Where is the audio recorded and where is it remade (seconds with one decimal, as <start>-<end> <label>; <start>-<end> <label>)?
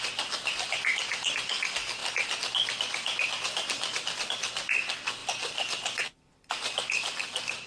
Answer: 0.0-7.7 recorded